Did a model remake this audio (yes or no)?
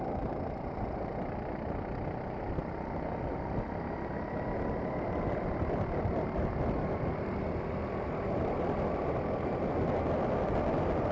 no